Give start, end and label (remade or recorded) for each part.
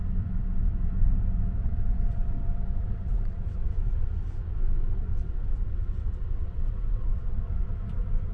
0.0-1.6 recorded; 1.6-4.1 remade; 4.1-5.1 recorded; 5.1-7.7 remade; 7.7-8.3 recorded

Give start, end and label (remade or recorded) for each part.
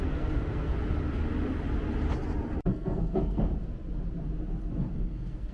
0.0-0.7 remade; 0.7-2.7 recorded; 2.7-3.5 remade; 3.5-4.8 recorded; 4.8-5.5 remade